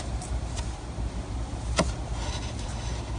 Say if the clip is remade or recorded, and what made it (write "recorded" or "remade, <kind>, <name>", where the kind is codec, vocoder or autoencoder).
remade, vocoder, BigVGAN v2